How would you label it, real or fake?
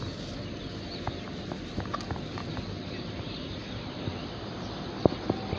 real